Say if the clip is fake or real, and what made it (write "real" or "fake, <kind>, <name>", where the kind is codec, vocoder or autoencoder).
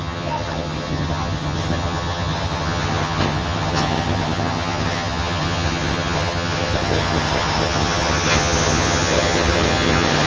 fake, vocoder, HiFi-GAN